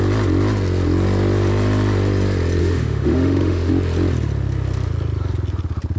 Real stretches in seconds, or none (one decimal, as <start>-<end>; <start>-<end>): 0.0-2.6; 3.7-6.0